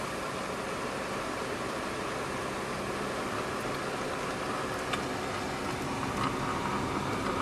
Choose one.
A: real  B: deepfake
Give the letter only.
A